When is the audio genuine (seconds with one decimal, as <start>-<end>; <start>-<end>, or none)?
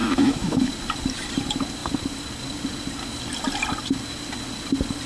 0.7-5.1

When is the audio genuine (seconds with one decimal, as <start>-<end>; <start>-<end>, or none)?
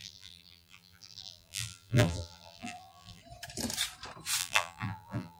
3.2-4.4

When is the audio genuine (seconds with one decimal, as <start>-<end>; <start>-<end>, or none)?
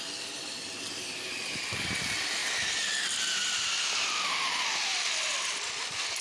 none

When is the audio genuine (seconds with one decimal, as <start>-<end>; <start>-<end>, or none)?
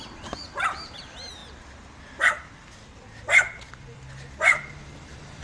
1.4-3.7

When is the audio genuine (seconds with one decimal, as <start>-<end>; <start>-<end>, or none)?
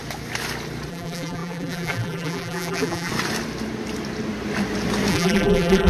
0.0-0.9; 3.1-5.1